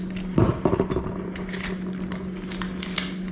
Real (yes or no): yes